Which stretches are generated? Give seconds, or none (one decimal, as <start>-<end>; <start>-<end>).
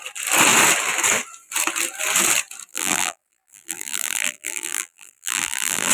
2.7-5.9